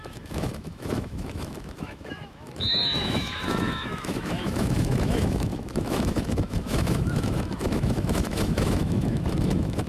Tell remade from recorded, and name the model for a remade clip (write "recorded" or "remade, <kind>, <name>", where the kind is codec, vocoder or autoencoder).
remade, autoencoder, DAC-VAE